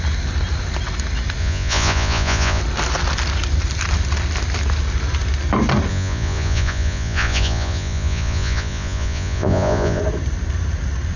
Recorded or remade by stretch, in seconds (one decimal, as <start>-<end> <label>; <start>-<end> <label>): 0.0-1.4 recorded; 1.4-2.6 remade; 2.6-5.9 recorded; 5.9-10.0 remade; 10.0-11.2 recorded